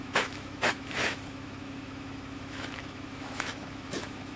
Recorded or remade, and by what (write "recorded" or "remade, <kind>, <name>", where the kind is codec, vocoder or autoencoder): remade, autoencoder, DAC-VAE